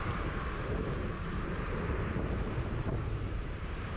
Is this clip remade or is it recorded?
remade